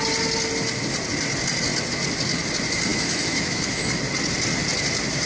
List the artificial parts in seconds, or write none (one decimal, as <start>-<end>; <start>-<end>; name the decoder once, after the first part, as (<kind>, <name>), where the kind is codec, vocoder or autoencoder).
2.9-4.0 (autoencoder, DAC-VAE)